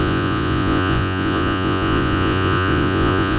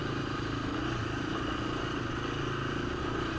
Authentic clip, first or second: second